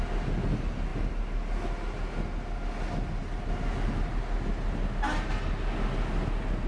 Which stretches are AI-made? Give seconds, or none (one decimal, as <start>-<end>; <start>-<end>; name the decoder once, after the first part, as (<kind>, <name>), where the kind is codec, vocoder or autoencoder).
none